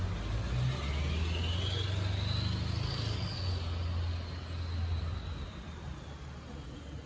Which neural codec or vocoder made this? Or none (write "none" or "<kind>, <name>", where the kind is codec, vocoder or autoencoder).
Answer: none